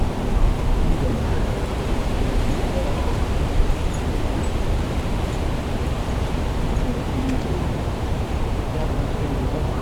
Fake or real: fake